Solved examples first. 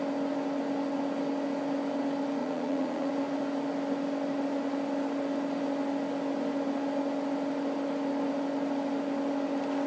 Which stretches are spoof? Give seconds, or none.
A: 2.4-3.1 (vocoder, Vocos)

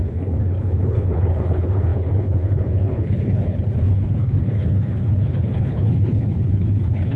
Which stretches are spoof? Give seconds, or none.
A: 0.0-7.2 (codec, HILCodec)

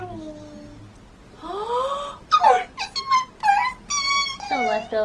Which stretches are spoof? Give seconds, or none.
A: none

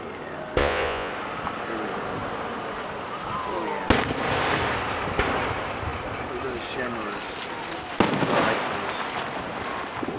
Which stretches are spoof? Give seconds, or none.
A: 0.6-1.1 (vocoder, Vocos)